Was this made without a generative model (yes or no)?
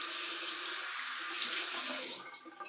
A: no